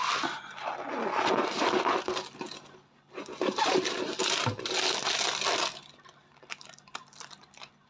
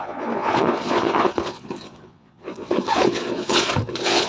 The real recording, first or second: first